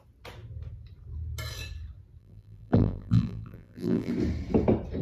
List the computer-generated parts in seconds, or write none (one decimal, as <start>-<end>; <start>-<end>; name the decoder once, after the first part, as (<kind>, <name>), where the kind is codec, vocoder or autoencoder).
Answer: 2.2-4.1 (vocoder, BigVGAN v2)